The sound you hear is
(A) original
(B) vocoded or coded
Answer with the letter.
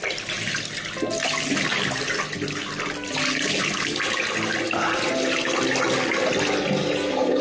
A